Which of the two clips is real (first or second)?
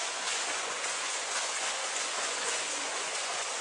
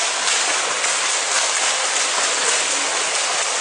second